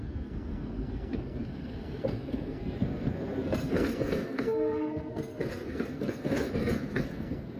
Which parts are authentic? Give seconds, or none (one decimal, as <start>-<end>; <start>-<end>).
none